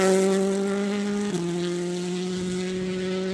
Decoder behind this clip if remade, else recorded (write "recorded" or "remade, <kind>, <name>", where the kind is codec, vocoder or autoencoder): recorded